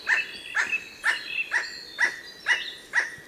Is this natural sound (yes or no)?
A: yes